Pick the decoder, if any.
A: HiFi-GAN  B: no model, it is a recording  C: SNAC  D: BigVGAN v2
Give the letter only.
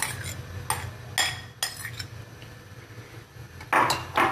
B